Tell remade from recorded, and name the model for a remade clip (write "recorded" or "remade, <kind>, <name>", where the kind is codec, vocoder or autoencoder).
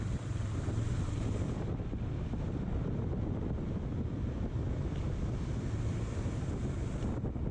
recorded